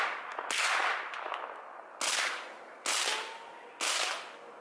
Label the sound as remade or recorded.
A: recorded